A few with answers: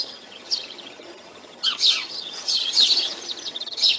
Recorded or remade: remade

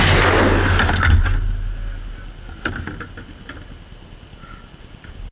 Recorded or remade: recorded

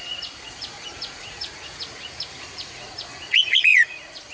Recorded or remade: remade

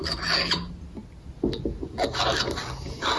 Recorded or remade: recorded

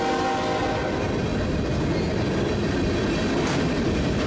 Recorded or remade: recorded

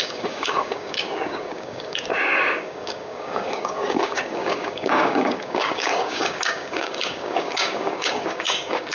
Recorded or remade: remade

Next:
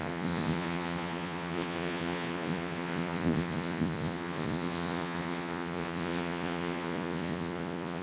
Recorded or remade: remade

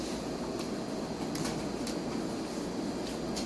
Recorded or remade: recorded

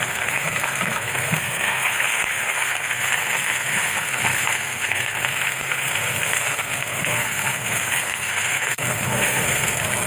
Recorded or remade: remade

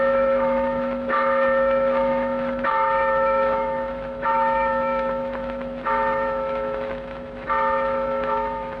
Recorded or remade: remade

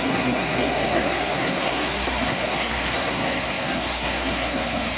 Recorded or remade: remade